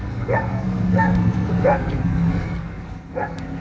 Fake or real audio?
fake